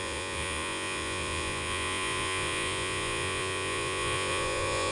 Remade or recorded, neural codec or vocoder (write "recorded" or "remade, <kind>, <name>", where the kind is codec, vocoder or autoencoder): remade, vocoder, Vocos